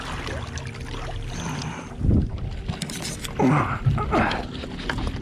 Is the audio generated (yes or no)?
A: no